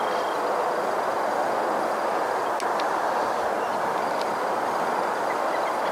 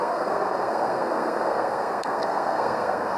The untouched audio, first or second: first